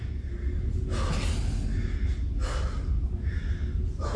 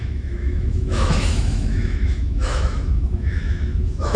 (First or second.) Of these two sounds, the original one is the first